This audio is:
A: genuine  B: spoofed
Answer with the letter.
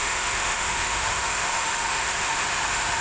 B